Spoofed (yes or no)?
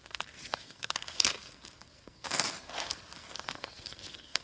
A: yes